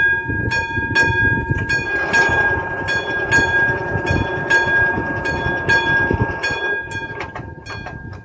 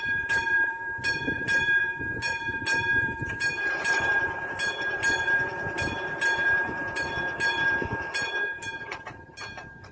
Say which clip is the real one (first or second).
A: first